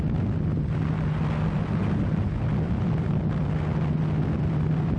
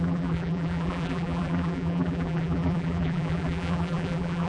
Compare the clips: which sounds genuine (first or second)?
first